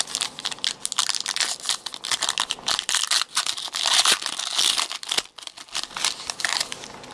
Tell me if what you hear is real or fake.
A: real